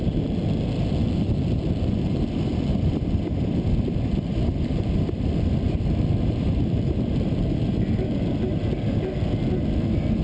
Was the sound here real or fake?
fake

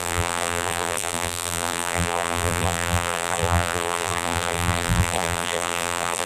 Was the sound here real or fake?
fake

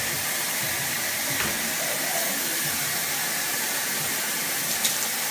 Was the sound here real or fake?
fake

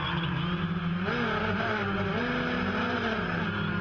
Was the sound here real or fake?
real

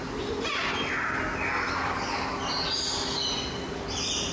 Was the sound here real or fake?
real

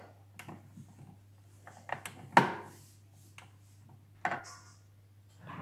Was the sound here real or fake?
real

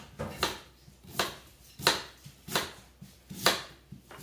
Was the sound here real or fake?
real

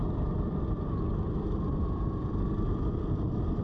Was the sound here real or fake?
fake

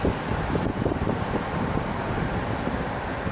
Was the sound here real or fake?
fake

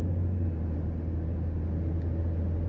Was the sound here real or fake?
real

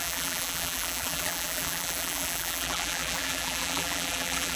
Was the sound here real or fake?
fake